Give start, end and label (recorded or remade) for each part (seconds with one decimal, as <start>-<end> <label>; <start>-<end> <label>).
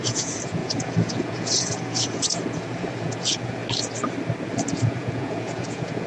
0.0-3.6 remade; 3.6-4.8 recorded; 4.8-6.1 remade